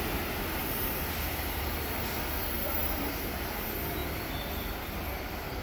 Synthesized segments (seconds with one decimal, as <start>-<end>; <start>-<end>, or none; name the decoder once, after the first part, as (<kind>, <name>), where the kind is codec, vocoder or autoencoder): none